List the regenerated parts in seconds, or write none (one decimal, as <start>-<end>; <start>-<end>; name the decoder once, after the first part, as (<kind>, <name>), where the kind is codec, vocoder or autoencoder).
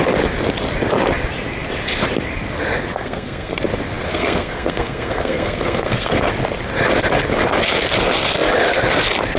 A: 2.9-3.6 (codec, SNAC); 4.1-6.3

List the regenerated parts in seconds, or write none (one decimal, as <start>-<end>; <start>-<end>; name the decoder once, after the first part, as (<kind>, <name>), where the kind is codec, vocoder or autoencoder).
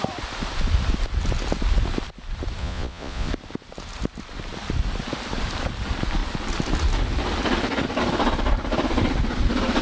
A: 2.6-3.3 (vocoder, Vocos)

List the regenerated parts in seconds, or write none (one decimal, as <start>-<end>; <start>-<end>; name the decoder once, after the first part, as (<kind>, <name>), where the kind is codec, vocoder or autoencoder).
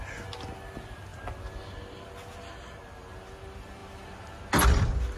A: none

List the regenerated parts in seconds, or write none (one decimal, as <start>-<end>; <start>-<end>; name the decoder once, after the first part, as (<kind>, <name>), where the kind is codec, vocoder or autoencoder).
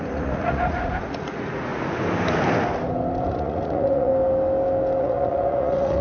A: 0.0-1.7 (vocoder, Vocos); 3.3-4.1; 5.0-6.0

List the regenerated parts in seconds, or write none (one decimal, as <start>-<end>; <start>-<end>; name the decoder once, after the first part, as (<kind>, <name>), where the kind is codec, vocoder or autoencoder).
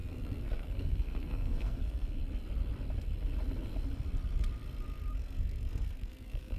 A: 0.0-2.2 (codec, SNAC); 5.1-6.6